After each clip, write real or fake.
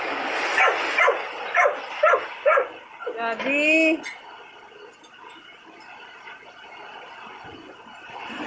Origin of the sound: real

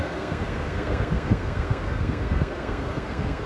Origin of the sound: fake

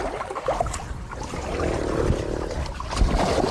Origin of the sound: real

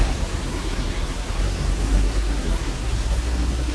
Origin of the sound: fake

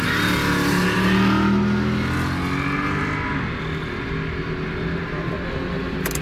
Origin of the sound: real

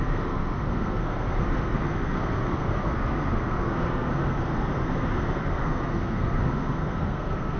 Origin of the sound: fake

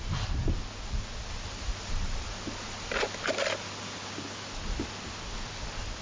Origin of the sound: real